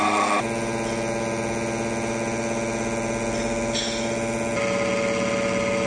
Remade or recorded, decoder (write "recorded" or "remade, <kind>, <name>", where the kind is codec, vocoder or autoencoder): recorded